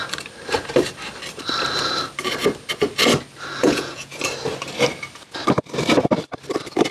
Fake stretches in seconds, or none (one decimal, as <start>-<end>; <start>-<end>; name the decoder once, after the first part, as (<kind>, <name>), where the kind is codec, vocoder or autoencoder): 3.6-4.2 (vocoder, Vocos)